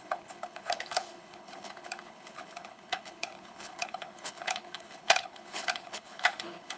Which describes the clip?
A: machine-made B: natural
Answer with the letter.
A